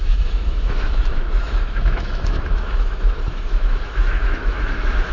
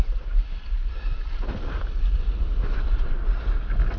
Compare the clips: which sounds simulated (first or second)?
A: first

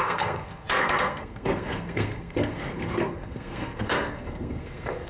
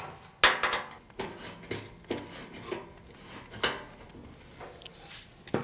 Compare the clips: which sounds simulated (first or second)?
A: first